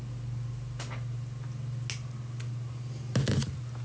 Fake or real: real